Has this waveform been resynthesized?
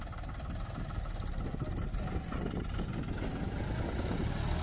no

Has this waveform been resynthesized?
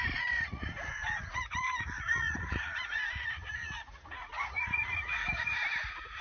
yes